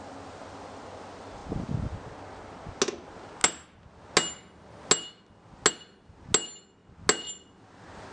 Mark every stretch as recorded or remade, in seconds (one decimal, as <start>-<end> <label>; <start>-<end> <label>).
0.0-8.1 recorded